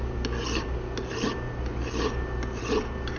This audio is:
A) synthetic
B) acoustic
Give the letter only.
B